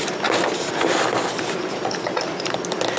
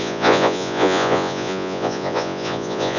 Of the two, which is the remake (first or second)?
second